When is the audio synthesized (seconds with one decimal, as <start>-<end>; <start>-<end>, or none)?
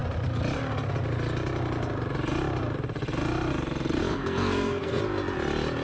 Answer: 4.1-5.0